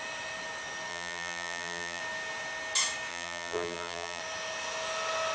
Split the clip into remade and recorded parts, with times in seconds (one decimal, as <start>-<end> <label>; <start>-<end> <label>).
0.0-0.9 recorded; 0.9-2.0 remade; 2.0-3.1 recorded; 3.1-4.2 remade; 4.2-5.3 recorded